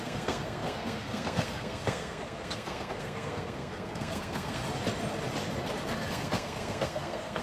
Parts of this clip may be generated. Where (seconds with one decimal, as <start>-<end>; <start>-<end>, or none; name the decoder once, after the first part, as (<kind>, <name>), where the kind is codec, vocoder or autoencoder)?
0.0-4.6 (codec, SNAC); 6.1-7.4